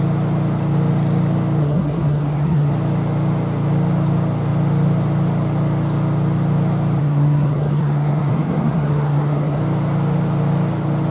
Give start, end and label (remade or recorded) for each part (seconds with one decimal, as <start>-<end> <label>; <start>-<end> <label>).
0.0-1.6 recorded; 1.6-2.7 remade; 2.7-7.0 recorded; 7.0-9.6 remade; 9.6-11.1 recorded